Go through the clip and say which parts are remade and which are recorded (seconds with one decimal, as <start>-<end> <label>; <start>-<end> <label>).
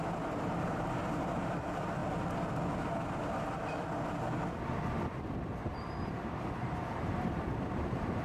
0.0-2.0 remade; 2.0-5.6 recorded; 5.6-8.2 remade